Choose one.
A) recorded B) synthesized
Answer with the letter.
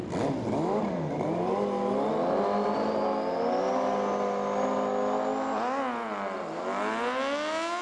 A